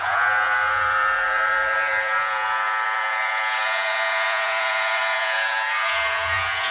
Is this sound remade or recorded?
remade